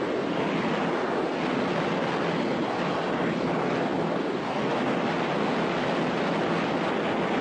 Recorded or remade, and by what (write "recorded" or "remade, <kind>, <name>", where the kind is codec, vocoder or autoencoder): recorded